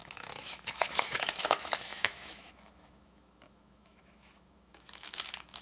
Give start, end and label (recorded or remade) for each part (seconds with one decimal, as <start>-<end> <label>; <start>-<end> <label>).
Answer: 0.0-5.6 remade